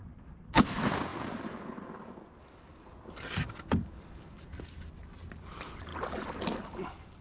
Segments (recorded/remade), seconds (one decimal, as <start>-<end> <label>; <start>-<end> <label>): 0.0-7.2 recorded